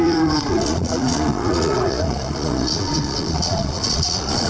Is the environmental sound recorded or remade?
remade